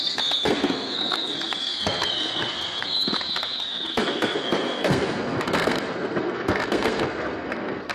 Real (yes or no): no